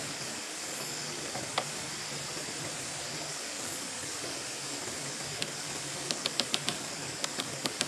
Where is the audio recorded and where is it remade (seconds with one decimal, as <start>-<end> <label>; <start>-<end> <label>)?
0.0-1.9 remade; 1.9-3.3 recorded; 3.3-7.9 remade